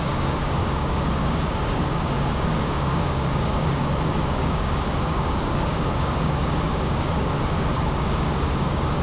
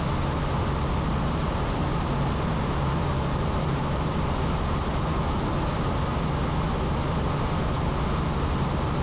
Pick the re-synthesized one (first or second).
first